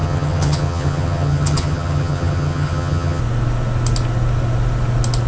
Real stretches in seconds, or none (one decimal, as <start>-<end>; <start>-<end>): 3.2-5.3